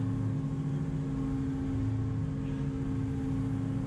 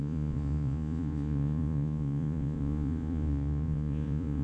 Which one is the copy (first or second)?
second